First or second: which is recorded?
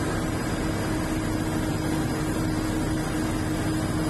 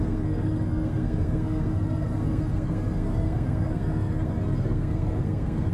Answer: first